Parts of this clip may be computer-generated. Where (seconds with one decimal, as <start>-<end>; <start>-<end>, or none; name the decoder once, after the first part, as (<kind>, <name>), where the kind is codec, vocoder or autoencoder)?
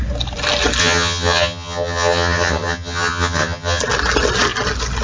0.8-3.8 (vocoder, HiFi-GAN)